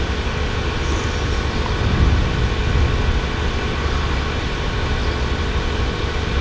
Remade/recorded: recorded